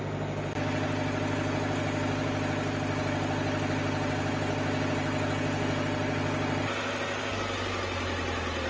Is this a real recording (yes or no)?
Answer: yes